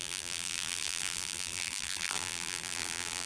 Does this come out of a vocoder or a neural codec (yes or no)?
yes